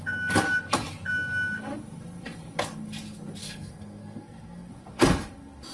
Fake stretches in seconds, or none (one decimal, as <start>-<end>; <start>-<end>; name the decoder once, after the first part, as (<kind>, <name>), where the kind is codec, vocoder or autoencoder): 3.4-4.7 (codec, SNAC)